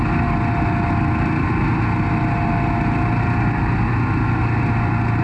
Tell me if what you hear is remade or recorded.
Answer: recorded